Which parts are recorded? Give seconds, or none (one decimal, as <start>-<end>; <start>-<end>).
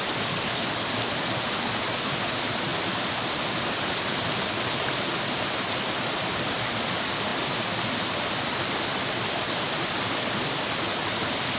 0.0-11.6